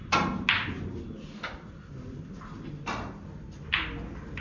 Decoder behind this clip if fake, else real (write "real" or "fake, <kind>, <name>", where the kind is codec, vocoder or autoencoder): real